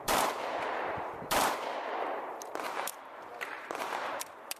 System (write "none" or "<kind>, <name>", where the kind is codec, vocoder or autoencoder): vocoder, BigVGAN v2